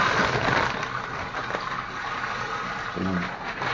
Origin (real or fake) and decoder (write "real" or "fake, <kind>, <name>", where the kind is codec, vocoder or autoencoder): real